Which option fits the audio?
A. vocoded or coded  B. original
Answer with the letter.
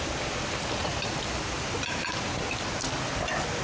B